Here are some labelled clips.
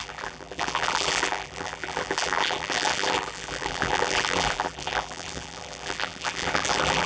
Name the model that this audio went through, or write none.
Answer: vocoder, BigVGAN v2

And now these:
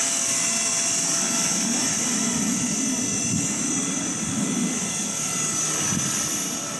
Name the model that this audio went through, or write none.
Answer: none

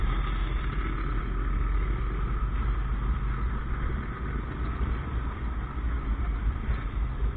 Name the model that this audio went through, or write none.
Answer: none